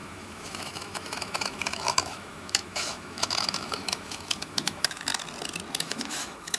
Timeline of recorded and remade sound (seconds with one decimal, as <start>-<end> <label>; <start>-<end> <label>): 0.0-5.1 remade; 5.1-5.8 recorded; 5.8-6.6 remade